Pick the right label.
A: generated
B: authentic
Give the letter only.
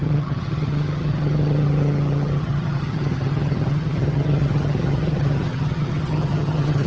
A